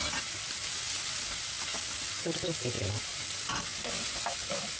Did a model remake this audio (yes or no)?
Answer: no